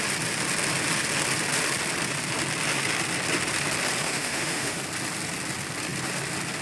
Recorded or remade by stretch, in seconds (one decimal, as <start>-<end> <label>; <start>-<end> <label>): 0.0-4.0 recorded; 4.0-4.8 remade; 4.8-6.6 recorded